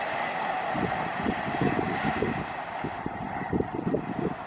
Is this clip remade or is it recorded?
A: recorded